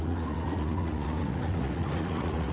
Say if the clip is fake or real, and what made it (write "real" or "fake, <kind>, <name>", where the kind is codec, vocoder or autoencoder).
fake, vocoder, Vocos